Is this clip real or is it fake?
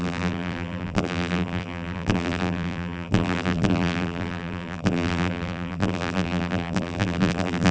fake